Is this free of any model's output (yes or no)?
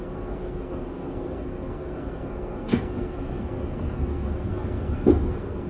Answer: no